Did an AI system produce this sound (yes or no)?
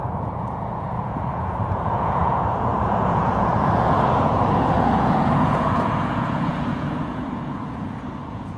yes